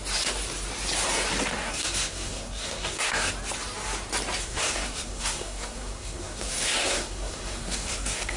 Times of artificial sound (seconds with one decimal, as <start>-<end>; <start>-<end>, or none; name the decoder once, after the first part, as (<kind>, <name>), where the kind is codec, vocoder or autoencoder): 1.6-3.3 (codec, SNAC); 4.4-8.4